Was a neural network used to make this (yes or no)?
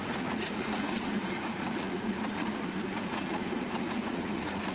yes